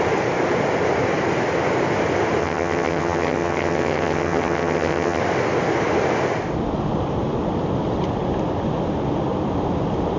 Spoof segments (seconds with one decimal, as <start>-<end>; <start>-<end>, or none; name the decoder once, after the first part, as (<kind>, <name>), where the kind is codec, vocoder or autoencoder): 2.4-5.2 (vocoder, HiFi-GAN)